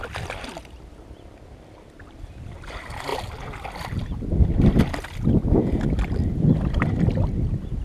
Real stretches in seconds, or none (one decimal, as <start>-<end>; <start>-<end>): 3.1-7.8

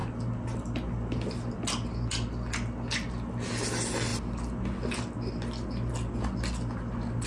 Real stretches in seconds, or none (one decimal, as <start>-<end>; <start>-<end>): 0.0-7.3